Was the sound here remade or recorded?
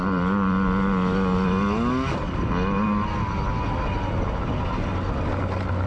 recorded